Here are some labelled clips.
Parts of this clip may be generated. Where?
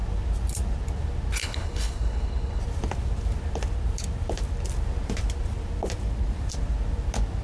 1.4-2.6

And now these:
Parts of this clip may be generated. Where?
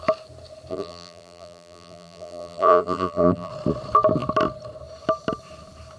0.7-3.5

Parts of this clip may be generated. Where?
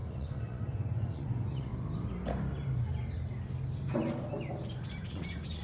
0.0-1.7; 5.1-5.6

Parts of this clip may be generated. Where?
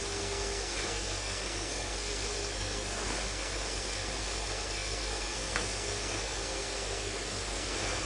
0.0-8.1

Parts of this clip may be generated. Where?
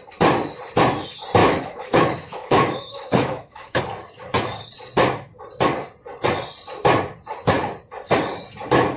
1.4-3.8